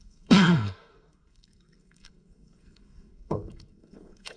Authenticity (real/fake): fake